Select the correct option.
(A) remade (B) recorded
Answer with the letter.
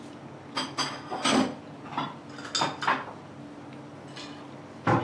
B